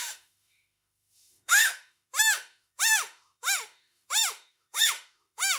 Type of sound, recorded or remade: remade